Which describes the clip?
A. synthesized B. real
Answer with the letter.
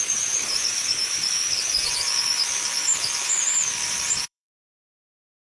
A